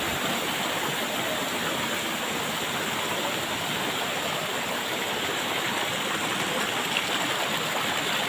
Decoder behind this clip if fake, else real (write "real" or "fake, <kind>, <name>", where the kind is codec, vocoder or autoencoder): real